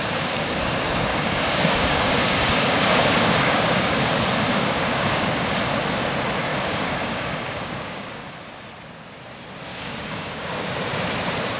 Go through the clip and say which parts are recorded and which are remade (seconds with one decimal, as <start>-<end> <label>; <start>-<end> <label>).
0.0-1.1 recorded; 1.1-4.1 remade; 4.1-4.5 recorded; 4.5-5.6 remade; 5.6-6.5 recorded; 6.5-8.2 remade; 8.2-9.7 recorded; 9.7-10.7 remade; 10.7-11.6 recorded